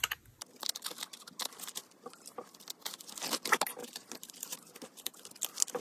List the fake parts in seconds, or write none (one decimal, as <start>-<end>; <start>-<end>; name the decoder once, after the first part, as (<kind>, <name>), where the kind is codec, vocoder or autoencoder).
3.8-5.3 (vocoder, BigVGAN v2)